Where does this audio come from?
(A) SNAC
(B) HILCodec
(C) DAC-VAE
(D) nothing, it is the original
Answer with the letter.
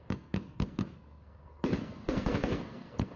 A